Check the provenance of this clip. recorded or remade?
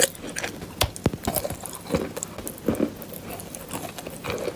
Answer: recorded